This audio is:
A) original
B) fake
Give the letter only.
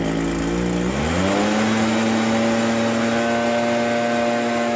A